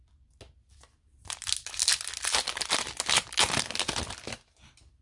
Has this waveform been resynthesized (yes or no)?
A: no